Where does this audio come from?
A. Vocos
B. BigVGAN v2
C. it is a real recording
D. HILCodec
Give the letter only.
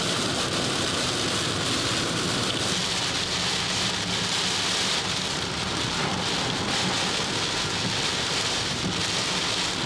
C